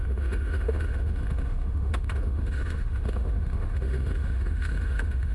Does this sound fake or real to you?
fake